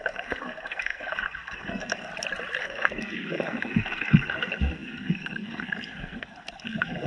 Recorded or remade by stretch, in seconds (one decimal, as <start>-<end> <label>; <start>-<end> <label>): 0.0-2.1 remade; 2.1-2.6 recorded; 2.6-7.1 remade